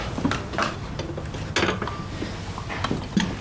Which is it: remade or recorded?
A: recorded